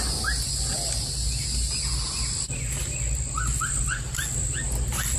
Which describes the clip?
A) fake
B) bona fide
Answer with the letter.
B